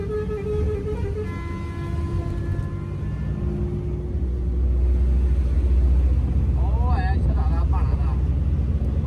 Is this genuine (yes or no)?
yes